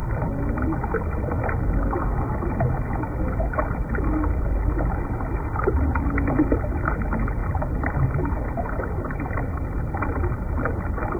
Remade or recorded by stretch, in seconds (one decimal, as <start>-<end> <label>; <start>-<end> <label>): 0.0-7.4 recorded; 7.4-10.7 remade; 10.7-11.2 recorded